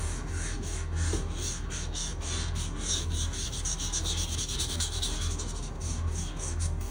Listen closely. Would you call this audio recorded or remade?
remade